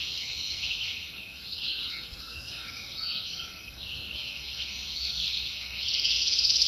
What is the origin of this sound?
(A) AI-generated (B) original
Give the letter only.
A